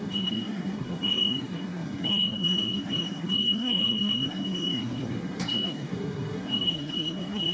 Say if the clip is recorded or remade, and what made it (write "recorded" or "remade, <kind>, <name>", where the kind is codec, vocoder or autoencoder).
remade, codec, SNAC